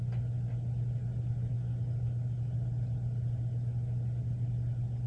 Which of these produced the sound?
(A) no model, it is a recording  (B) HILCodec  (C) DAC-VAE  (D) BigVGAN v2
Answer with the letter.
A